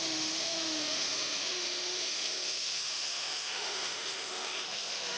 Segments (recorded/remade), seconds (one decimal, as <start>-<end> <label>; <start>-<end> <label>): 0.0-5.2 remade